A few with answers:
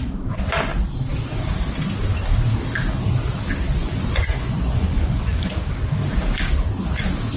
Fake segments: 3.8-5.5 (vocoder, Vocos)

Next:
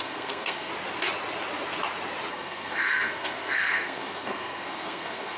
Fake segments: 0.0-0.7 (codec, SNAC); 2.3-5.4

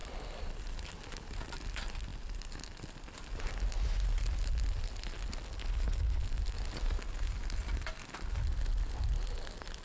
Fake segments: 5.6-6.2 (codec, HILCodec)